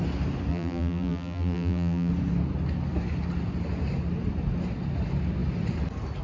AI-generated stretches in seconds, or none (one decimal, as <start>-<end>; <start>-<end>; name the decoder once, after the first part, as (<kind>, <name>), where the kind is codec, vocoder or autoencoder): 0.5-2.1 (vocoder, BigVGAN v2)